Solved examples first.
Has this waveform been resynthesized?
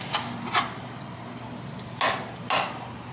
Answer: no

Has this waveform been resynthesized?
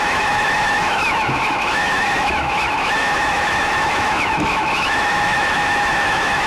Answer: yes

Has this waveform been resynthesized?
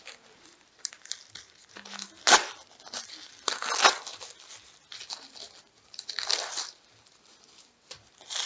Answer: no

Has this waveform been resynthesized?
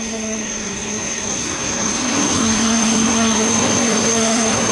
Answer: yes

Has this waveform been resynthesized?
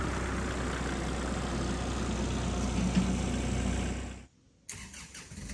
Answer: no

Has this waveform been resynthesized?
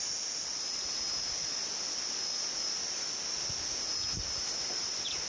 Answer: no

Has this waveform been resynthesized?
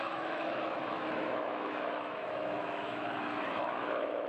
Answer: yes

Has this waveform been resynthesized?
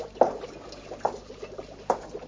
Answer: no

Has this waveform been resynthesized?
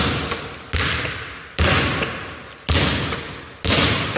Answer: no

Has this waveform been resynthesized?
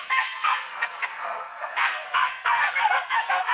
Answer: yes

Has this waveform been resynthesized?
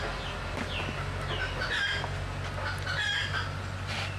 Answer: no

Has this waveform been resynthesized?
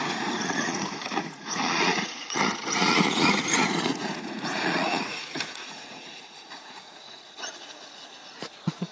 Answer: yes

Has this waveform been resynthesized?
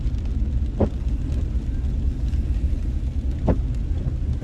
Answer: no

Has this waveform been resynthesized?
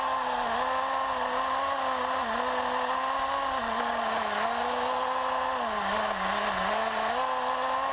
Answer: no